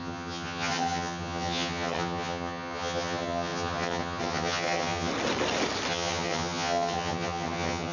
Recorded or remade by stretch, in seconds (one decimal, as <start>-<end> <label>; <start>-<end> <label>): 0.0-5.1 remade; 5.1-5.9 recorded; 5.9-7.9 remade